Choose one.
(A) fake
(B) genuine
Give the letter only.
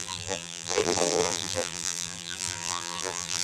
A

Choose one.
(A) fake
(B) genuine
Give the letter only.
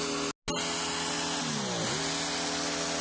B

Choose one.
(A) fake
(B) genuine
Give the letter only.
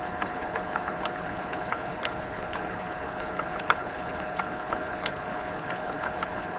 A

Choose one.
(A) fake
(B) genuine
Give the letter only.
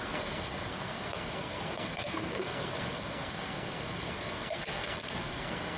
A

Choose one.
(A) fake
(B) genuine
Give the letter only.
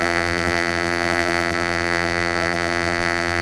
A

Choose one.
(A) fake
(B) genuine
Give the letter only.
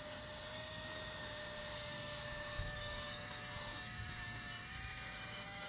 A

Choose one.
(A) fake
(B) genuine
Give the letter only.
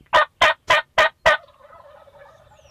B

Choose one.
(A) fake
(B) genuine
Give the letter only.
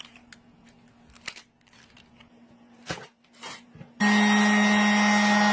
B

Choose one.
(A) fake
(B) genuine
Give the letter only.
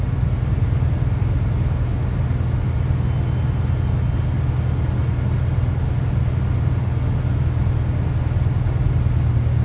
B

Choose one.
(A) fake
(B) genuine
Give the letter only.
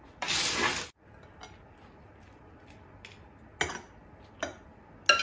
B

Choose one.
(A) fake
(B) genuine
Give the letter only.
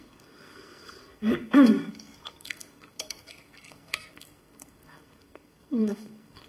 A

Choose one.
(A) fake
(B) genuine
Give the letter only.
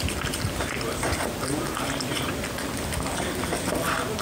B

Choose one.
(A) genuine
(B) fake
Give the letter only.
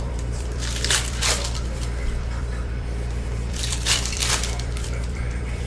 B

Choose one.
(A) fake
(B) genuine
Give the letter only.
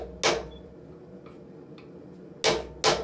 B